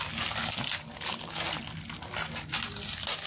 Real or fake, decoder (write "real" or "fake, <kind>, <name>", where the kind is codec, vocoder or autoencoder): real